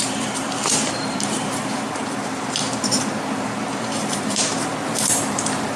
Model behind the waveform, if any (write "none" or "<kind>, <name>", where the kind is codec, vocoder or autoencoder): vocoder, BigVGAN v2